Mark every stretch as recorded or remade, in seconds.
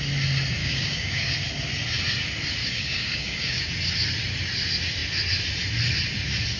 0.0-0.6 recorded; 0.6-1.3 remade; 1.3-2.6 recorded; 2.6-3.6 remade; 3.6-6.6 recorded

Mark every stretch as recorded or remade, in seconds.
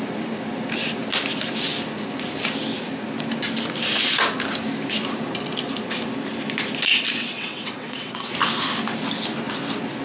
0.0-6.9 recorded; 6.9-8.3 remade; 8.3-10.0 recorded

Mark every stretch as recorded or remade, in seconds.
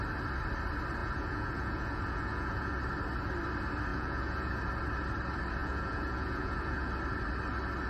0.0-1.0 recorded; 1.0-2.7 remade; 2.7-3.9 recorded; 3.9-4.6 remade; 4.6-5.6 recorded; 5.6-6.9 remade; 6.9-7.9 recorded